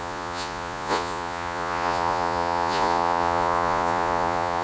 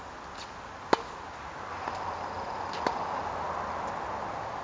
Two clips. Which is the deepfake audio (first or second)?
first